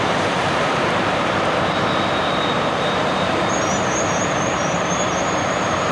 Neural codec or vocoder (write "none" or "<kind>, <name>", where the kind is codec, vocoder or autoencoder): vocoder, BigVGAN v2